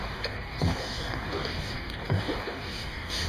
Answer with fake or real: fake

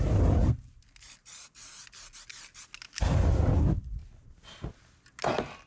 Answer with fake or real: real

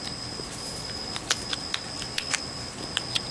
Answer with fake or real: real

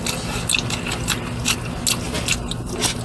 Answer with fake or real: real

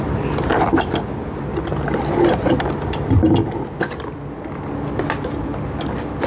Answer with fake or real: real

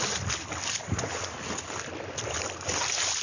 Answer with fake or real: real